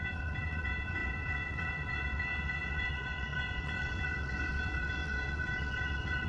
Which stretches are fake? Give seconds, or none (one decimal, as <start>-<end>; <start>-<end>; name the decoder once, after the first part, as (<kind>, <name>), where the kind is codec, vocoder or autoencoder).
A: 0.0-6.3 (vocoder, WaveNeXt)